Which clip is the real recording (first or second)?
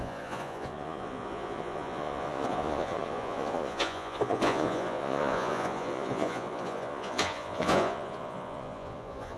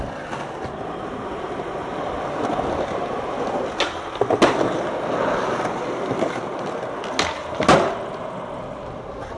second